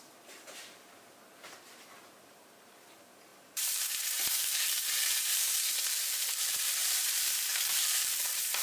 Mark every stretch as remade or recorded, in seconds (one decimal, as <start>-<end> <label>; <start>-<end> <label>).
0.0-8.6 remade